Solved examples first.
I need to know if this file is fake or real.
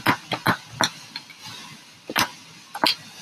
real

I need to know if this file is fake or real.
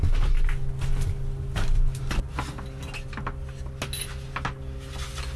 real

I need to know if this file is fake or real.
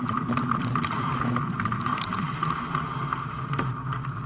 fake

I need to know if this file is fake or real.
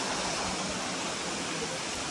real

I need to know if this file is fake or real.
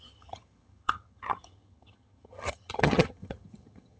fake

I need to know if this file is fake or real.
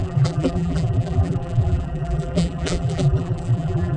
fake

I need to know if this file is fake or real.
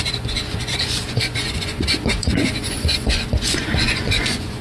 fake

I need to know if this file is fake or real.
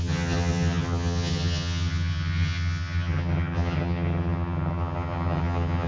fake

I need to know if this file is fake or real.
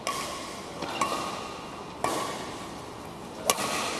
real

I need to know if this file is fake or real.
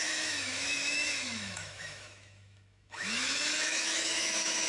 fake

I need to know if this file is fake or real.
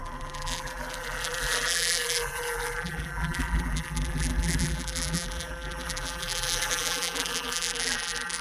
fake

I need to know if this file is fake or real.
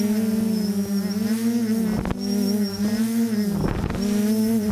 real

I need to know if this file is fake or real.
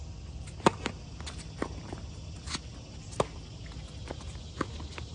real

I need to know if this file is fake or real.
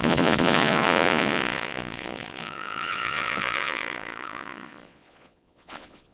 fake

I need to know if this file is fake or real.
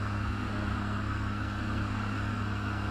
fake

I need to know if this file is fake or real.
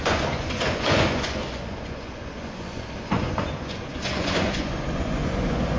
fake